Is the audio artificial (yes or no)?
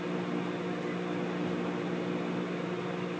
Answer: no